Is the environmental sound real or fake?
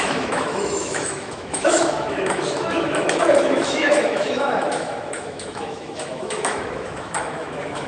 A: fake